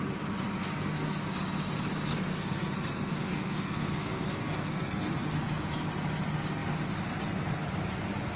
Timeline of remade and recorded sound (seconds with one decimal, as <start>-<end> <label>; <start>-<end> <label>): 0.0-0.6 recorded; 0.6-1.2 remade; 1.2-2.1 recorded; 2.1-5.1 remade; 5.1-8.4 recorded